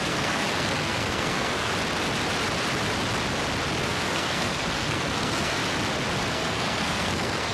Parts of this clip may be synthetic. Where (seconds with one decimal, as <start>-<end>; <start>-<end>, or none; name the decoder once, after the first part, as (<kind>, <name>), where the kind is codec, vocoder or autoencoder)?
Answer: 0.0-1.7 (codec, SNAC); 3.8-5.6; 6.3-7.5